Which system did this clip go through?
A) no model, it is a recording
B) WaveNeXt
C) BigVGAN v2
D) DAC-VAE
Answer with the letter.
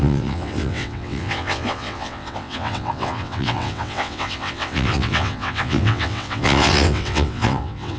B